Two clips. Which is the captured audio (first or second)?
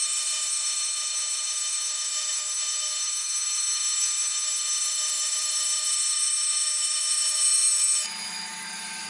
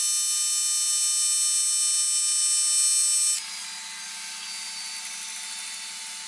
second